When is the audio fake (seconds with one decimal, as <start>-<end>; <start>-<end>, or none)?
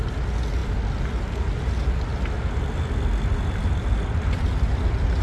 none